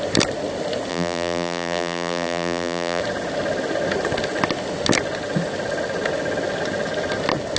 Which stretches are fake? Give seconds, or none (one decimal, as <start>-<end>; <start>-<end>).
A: 0.9-3.0